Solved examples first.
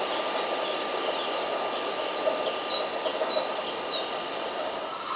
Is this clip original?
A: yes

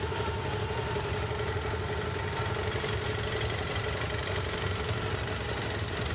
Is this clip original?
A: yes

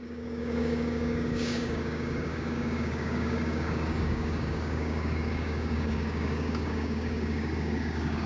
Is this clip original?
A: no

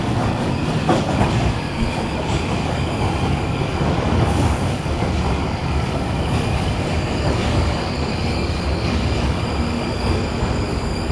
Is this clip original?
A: no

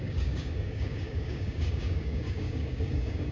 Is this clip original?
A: no